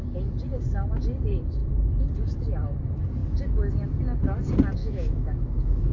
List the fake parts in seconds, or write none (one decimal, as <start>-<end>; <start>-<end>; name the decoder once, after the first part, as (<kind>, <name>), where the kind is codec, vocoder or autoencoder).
4.8-5.9 (autoencoder, DAC-VAE)

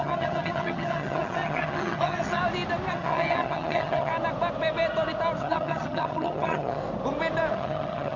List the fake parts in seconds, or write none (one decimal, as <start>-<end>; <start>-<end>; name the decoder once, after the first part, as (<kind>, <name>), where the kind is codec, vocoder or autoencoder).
0.0-2.4 (vocoder, HiFi-GAN); 2.9-4.1; 5.4-6.8; 7.5-8.2

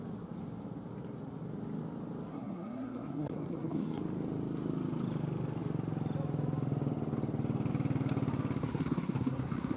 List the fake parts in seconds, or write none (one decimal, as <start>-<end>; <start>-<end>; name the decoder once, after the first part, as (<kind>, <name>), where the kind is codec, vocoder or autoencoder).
2.3-4.0 (codec, SNAC); 8.6-9.8

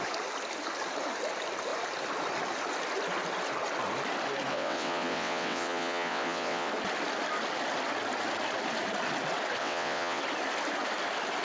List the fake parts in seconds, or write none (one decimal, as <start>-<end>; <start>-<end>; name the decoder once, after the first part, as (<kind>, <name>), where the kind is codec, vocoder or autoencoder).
4.5-6.7 (vocoder, WaveNeXt); 9.6-10.2

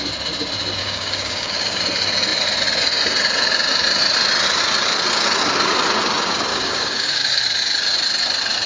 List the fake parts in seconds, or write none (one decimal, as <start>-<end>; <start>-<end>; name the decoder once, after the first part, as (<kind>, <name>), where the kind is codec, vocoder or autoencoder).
0.8-1.8 (codec, DAC); 6.5-7.4

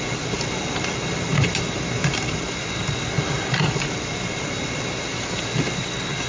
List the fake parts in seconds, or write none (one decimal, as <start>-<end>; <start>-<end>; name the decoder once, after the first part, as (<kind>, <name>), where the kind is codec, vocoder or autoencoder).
none